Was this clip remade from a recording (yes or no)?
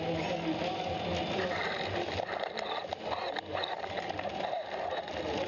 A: no